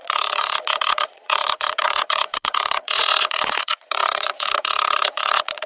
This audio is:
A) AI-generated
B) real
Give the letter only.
A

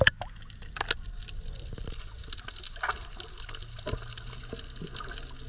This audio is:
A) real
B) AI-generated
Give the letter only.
A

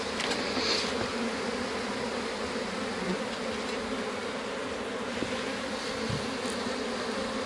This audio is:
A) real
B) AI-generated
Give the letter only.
A